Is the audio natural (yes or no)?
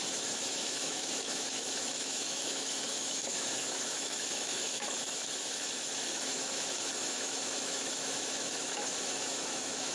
no